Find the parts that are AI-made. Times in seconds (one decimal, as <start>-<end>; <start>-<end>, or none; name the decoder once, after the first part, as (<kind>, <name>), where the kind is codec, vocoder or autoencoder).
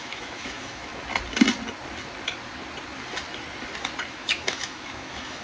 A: 0.0-0.9 (autoencoder, DAC-VAE); 4.1-5.4